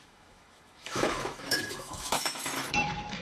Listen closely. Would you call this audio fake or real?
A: fake